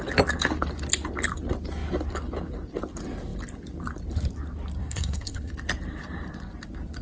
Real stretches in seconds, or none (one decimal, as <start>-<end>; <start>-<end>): 0.0-4.8; 5.5-7.0